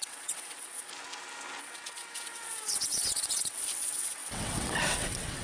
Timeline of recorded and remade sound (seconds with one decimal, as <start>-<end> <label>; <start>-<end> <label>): 0.0-0.9 remade; 0.9-1.6 recorded; 1.6-5.4 remade